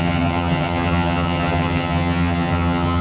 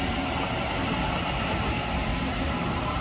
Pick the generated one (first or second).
first